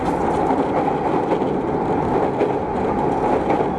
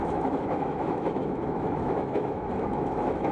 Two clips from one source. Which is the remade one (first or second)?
second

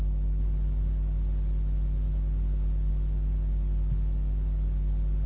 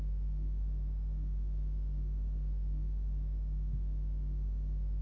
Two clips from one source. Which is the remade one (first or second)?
second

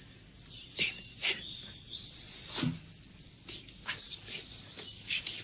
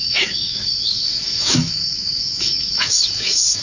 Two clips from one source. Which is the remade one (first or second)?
second